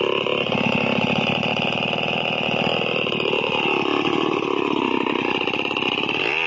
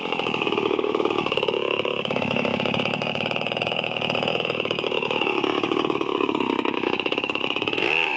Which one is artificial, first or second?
second